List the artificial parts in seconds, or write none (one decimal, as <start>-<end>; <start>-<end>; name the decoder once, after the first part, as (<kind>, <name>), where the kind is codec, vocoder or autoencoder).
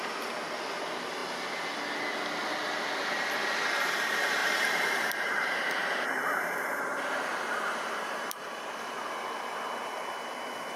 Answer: 4.4-9.1 (vocoder, BigVGAN v2)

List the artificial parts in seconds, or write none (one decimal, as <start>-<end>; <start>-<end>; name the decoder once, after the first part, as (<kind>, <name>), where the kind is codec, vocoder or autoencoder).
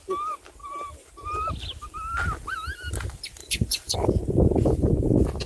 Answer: 0.6-1.1 (vocoder, BigVGAN v2); 3.4-4.1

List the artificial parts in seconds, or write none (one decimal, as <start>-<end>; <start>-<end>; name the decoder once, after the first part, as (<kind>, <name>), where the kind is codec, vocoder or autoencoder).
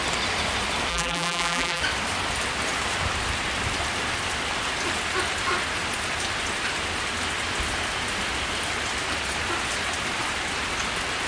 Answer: 0.9-1.8 (vocoder, BigVGAN v2)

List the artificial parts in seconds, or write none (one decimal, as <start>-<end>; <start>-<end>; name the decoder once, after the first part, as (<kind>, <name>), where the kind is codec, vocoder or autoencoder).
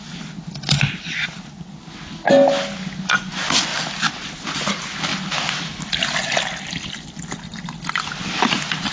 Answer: none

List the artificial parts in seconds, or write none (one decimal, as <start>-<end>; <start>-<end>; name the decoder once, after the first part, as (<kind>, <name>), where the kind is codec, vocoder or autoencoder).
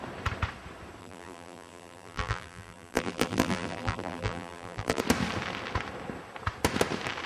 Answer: 1.0-5.0 (vocoder, BigVGAN v2)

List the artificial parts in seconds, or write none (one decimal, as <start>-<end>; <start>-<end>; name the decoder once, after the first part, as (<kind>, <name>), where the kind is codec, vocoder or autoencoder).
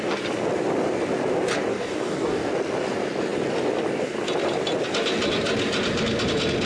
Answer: 1.7-2.5 (codec, DAC)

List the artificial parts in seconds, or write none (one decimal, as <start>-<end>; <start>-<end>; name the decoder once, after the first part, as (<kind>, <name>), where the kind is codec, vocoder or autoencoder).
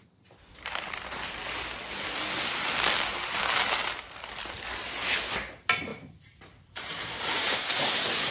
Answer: 0.0-1.4 (vocoder, BigVGAN v2); 5.9-7.6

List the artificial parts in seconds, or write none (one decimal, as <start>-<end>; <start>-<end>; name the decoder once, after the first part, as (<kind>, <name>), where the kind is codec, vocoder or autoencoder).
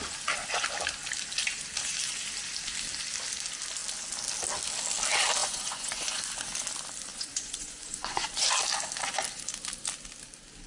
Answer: 5.4-6.2 (vocoder, Vocos); 7.1-8.5